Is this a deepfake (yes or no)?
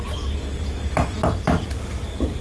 no